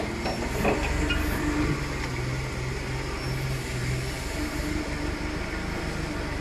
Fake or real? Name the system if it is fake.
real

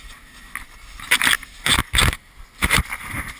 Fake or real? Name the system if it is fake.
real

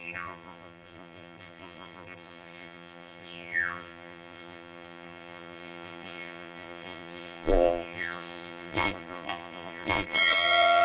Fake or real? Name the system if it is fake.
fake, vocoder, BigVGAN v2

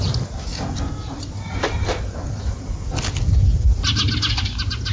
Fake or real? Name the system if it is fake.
real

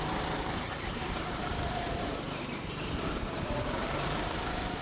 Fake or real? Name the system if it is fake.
fake, vocoder, BigVGAN v2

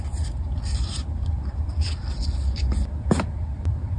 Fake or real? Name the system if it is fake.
fake, vocoder, BigVGAN v2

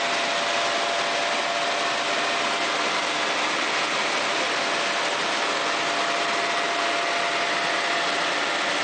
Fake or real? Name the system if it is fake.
real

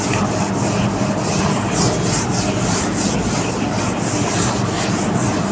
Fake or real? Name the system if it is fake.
real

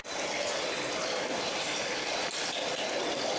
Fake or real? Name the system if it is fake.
real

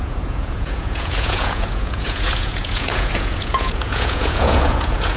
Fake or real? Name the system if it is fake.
fake, vocoder, Vocos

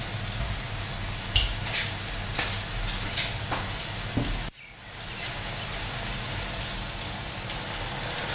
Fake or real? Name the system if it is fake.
real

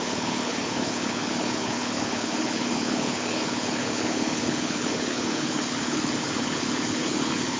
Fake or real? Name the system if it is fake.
fake, codec, HILCodec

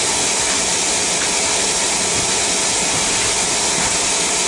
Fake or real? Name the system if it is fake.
real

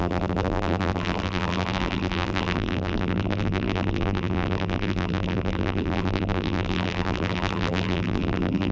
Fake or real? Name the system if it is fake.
fake, vocoder, BigVGAN v2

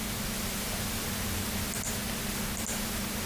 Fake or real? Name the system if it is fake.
real